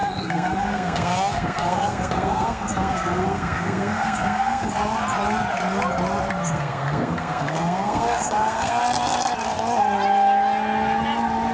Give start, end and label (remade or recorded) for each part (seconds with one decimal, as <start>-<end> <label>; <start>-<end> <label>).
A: 0.0-4.7 remade; 4.7-6.4 recorded; 6.4-8.8 remade; 8.8-11.5 recorded